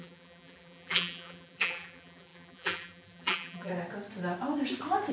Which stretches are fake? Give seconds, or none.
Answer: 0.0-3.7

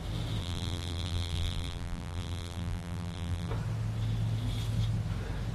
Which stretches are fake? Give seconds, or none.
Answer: 0.4-3.5

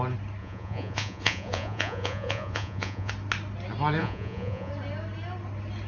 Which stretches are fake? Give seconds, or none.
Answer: 0.4-3.1; 4.0-4.7

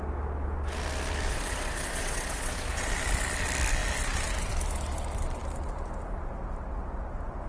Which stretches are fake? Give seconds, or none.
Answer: 1.3-2.9

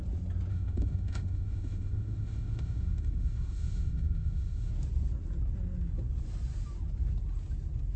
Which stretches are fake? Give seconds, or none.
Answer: 0.5-4.7

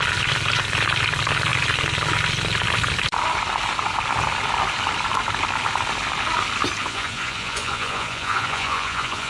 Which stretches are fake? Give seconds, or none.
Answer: 6.8-9.3

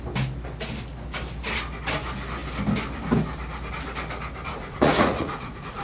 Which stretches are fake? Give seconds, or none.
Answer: 4.5-5.8

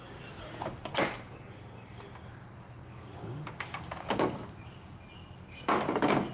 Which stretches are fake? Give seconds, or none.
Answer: 2.8-5.0